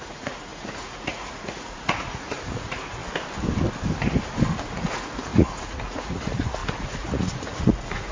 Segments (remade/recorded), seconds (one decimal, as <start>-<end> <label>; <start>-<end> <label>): 0.0-3.0 remade; 3.0-4.6 recorded; 4.6-8.1 remade